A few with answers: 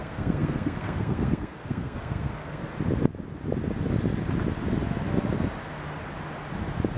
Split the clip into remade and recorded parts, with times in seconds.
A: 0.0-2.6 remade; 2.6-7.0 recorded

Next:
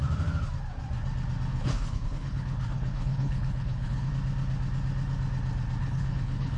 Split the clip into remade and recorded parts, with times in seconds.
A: 0.0-1.5 recorded; 1.5-4.1 remade; 4.1-5.8 recorded; 5.8-6.6 remade